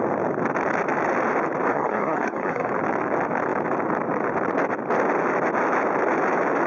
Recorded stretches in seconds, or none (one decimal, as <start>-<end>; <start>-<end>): 0.0-1.7; 2.7-6.7